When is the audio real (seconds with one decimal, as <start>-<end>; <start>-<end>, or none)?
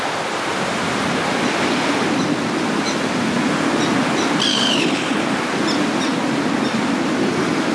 0.0-4.5; 5.2-7.7